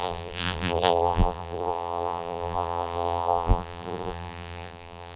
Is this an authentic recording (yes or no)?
no